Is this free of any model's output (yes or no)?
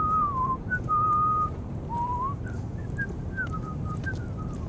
no